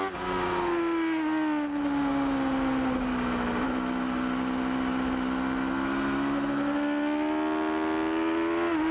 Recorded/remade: recorded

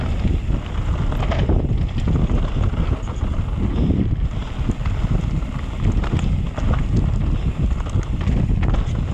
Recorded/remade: recorded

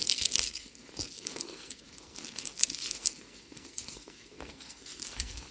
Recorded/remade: remade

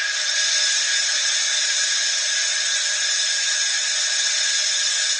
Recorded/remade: recorded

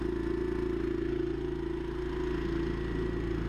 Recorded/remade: recorded